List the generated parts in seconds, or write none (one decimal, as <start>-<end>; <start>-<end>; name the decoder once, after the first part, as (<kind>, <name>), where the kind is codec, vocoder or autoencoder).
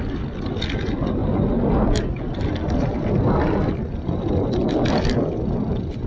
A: none